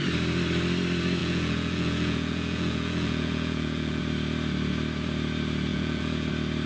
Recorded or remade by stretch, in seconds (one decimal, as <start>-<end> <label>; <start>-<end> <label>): 0.0-1.2 recorded; 1.2-4.0 remade; 4.0-5.7 recorded; 5.7-6.3 remade; 6.3-6.7 recorded